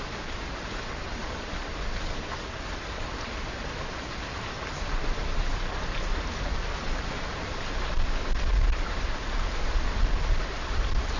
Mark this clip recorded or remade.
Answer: recorded